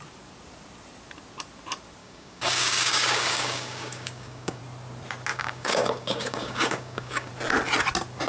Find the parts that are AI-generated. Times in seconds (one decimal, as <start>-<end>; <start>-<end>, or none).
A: 2.0-4.6; 5.3-7.3